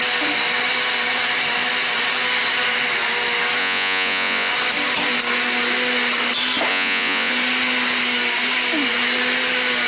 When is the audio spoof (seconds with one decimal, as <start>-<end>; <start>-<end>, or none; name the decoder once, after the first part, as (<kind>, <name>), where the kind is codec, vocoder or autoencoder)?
3.6-4.5 (vocoder, Vocos); 6.7-7.3